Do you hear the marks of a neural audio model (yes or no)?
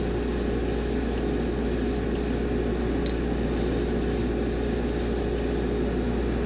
no